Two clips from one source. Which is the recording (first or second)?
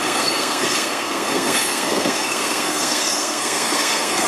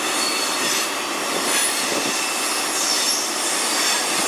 second